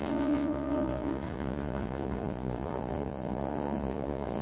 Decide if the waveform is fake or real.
fake